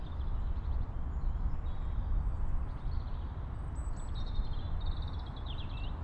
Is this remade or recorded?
recorded